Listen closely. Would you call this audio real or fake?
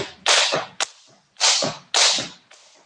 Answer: real